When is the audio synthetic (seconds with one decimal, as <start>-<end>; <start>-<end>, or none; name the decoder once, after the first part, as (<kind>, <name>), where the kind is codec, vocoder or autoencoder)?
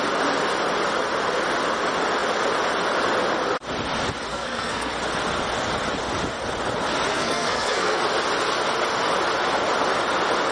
4.3-4.9 (codec, SNAC); 7.1-8.0